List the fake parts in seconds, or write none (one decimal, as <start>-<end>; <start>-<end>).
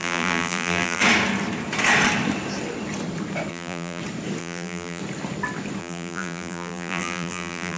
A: 0.0-1.0; 3.5-4.0; 4.4-5.0; 5.8-7.8